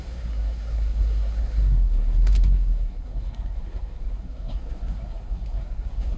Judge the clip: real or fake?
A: fake